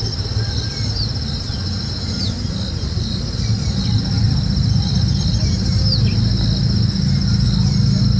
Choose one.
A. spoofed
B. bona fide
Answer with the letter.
B